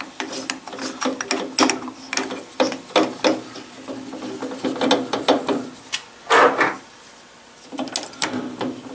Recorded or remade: recorded